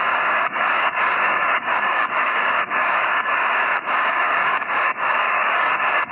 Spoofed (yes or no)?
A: yes